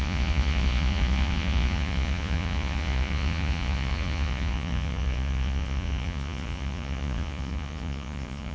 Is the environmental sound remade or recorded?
remade